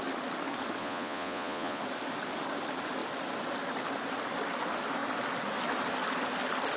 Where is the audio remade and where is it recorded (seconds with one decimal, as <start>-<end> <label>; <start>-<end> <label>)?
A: 0.0-0.8 recorded; 0.8-1.8 remade; 1.8-6.8 recorded